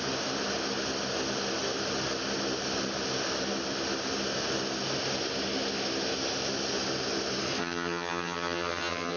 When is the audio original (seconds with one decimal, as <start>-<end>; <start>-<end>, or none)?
0.0-7.6